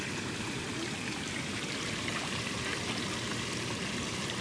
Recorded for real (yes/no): yes